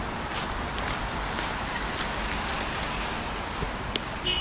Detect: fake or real real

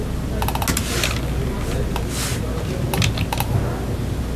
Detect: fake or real real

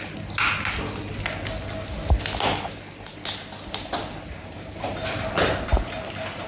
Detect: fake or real real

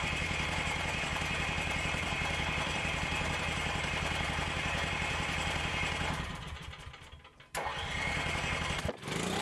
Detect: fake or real fake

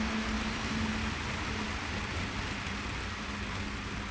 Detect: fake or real real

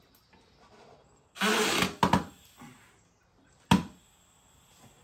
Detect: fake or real real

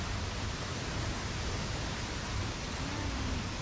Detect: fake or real fake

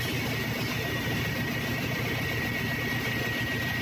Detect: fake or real real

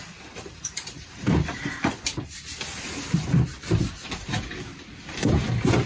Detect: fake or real fake